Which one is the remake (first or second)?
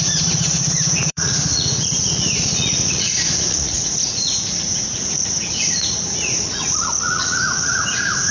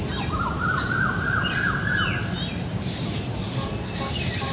first